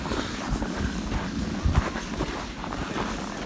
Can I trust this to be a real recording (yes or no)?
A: yes